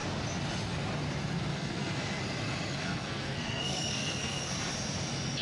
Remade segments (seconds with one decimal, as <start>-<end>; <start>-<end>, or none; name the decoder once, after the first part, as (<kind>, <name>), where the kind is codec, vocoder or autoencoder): 1.5-2.2 (codec, SNAC); 2.8-4.5